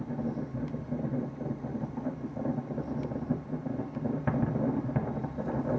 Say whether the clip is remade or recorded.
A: recorded